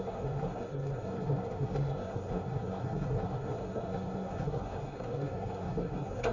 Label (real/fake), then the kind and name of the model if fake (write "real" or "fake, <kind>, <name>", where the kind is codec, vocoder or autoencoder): fake, codec, SNAC